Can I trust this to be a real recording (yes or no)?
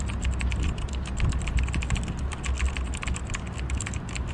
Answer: yes